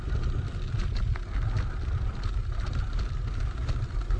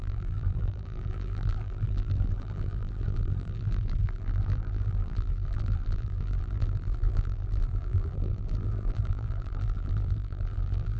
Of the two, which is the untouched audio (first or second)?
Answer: first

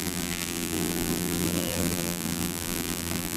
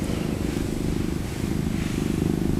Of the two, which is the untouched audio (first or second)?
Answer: second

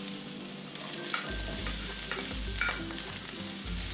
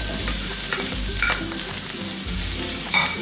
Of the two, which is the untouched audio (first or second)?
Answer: first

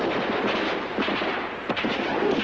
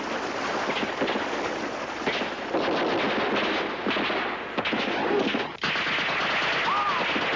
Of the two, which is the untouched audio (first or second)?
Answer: second